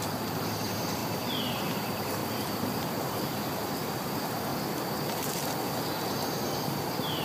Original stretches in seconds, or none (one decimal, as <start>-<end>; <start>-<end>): 1.0-1.5; 4.5-6.8